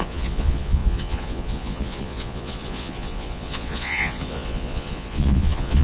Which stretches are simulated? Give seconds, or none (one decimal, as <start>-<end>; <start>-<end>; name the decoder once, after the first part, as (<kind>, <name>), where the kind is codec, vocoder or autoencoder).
0.0-5.8 (vocoder, Vocos)